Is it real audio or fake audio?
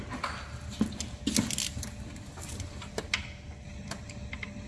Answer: real